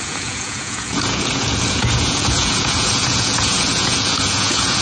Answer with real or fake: fake